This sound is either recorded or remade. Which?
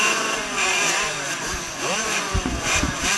remade